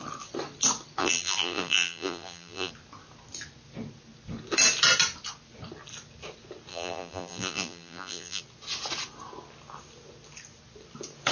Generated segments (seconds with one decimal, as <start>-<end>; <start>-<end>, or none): 1.0-2.7; 6.7-8.4